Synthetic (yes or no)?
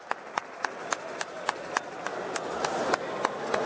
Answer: no